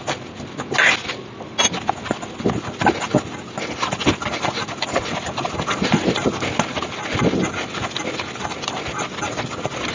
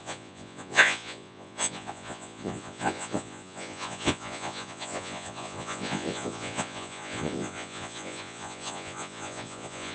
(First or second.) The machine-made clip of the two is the second